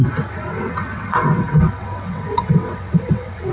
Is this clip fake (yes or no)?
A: yes